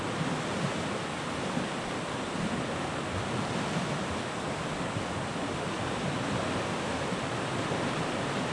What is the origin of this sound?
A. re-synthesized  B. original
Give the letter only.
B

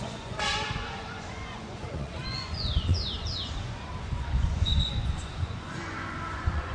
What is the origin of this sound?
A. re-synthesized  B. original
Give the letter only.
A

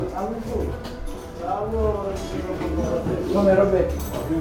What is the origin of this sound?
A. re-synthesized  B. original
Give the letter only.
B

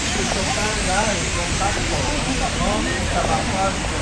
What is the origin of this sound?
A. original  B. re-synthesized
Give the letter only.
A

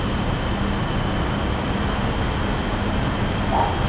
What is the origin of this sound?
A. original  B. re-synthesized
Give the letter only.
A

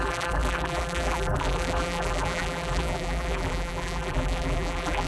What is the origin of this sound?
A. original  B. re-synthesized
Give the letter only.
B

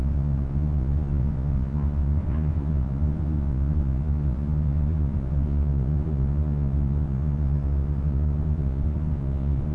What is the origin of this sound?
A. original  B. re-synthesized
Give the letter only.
B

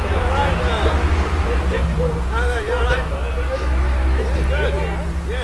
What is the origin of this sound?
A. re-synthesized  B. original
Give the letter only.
B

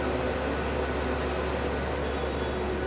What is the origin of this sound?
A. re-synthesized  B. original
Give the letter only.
B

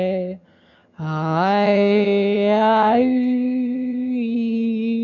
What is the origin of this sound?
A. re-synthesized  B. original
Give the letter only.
A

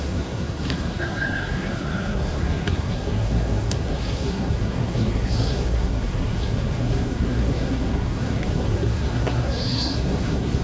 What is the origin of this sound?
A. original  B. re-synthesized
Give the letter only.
B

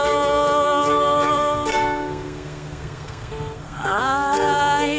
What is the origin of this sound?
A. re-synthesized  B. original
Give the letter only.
A